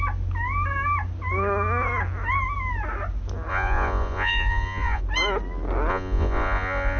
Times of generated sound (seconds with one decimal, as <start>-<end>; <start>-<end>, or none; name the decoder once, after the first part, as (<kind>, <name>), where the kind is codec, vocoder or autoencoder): 3.5-5.0 (vocoder, Vocos); 5.9-7.0

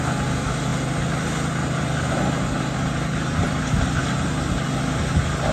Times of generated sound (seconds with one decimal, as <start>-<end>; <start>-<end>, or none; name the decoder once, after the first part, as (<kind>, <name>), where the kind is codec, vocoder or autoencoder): none

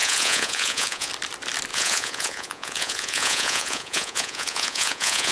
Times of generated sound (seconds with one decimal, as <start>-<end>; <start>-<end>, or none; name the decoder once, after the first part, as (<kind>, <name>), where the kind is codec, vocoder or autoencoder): 0.0-1.1 (vocoder, Vocos); 1.7-5.3